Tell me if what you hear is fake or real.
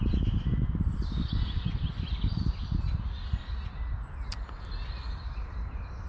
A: real